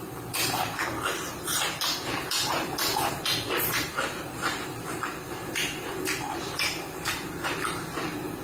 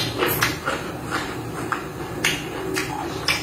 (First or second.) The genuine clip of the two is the second